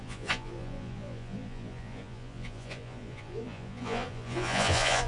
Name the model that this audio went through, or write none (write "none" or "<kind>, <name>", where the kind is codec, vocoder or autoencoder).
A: vocoder, Vocos